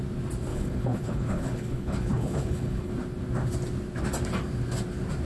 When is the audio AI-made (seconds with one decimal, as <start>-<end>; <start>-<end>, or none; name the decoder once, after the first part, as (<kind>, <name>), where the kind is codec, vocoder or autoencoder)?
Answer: 0.5-2.9 (codec, HILCodec)